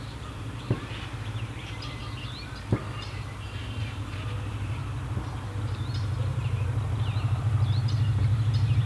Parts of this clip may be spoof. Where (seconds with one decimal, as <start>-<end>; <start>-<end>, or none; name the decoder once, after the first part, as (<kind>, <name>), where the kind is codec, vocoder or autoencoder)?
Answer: 0.0-2.0 (vocoder, BigVGAN v2); 3.0-4.8; 5.6-8.9